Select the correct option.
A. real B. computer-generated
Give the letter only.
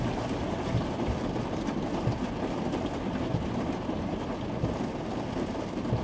A